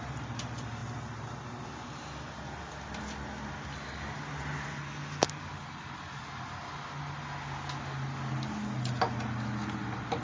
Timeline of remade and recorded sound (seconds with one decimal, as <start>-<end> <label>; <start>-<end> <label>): 0.0-10.2 recorded